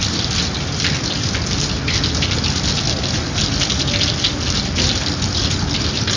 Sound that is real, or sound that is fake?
real